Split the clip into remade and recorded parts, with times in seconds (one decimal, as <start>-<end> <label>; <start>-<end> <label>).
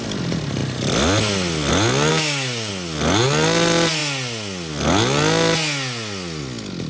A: 0.0-2.1 recorded; 2.1-2.7 remade; 2.7-6.9 recorded